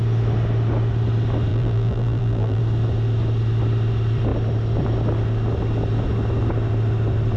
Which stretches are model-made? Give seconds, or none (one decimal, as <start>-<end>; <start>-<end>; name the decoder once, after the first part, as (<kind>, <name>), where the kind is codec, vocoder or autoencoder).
1.5-2.6 (vocoder, BigVGAN v2)